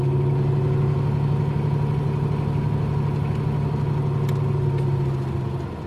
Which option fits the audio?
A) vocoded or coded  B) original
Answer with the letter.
B